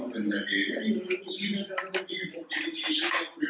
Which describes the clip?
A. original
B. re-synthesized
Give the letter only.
A